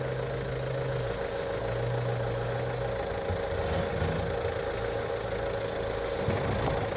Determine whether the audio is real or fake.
real